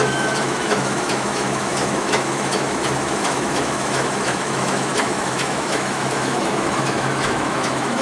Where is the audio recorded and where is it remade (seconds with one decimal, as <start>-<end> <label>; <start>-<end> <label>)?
0.0-8.0 remade